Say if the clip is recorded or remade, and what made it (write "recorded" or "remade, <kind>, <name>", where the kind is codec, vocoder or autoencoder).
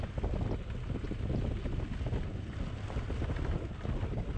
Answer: recorded